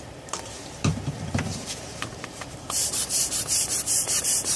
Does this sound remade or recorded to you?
remade